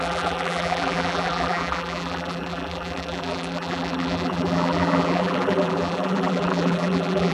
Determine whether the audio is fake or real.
fake